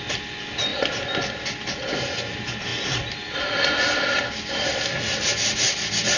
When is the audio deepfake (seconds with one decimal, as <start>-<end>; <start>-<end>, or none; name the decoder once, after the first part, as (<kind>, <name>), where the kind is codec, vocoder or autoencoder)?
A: none